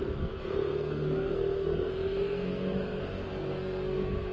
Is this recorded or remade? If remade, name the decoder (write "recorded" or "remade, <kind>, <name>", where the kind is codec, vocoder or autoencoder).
remade, codec, SNAC